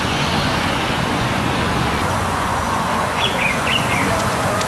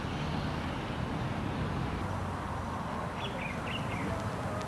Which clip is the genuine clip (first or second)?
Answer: second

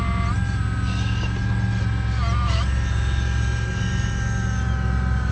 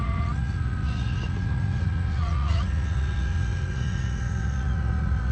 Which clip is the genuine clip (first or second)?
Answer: first